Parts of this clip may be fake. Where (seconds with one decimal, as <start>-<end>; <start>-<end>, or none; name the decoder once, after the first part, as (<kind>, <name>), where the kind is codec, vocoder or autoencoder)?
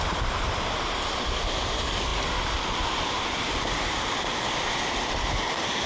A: none